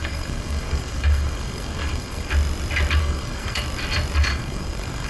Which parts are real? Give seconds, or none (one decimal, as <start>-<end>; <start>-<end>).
2.3-3.0; 3.6-4.3